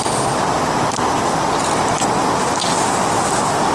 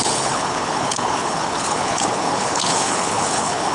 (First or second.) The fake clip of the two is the second